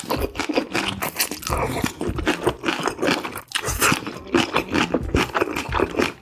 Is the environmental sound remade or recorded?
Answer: recorded